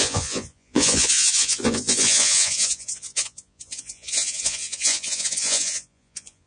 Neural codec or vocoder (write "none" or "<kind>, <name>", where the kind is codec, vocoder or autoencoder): vocoder, Vocos